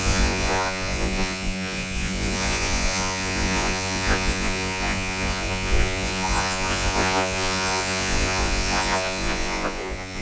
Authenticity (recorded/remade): remade